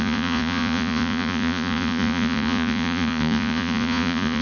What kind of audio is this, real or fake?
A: fake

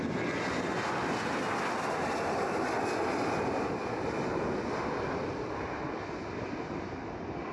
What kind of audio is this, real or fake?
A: real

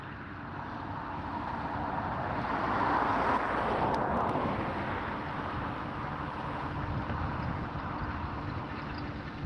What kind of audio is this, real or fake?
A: real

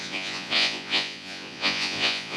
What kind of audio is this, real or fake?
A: fake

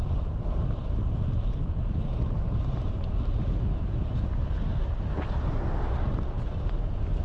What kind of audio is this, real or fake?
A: real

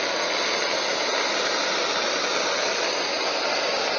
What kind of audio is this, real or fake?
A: real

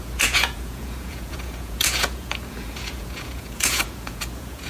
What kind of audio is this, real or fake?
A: fake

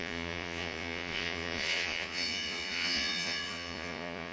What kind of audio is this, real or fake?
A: fake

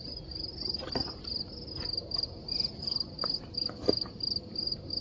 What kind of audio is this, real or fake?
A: real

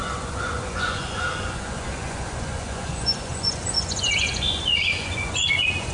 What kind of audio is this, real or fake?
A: fake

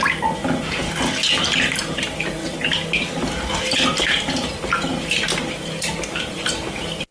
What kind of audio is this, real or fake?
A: real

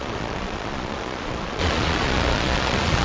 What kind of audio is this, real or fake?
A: fake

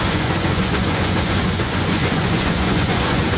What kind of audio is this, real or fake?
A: fake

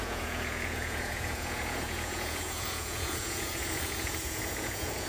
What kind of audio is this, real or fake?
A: fake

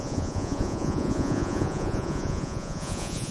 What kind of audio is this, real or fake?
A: fake